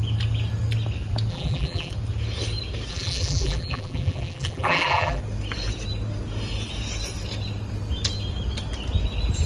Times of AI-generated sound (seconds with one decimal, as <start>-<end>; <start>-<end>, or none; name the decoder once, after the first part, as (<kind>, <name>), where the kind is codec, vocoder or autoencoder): 1.3-1.9 (vocoder, BigVGAN v2); 2.9-5.2